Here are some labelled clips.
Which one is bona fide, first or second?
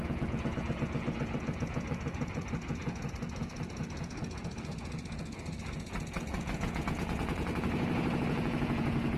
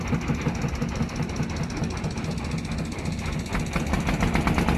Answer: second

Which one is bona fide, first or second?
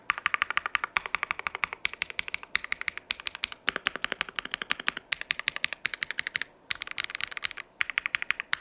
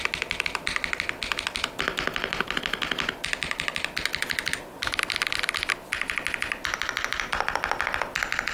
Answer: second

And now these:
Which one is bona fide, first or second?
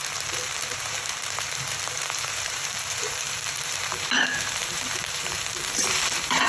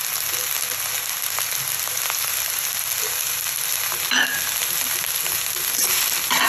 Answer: second